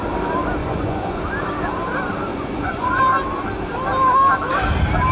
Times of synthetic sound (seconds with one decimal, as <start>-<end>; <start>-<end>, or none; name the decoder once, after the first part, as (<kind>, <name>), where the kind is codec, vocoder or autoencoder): 0.6-1.2 (vocoder, Vocos); 2.3-3.0